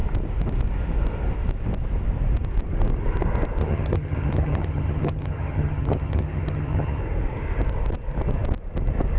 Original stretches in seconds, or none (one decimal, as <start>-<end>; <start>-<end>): 0.0-3.6; 7.0-9.2